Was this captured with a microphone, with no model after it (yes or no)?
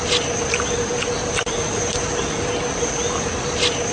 yes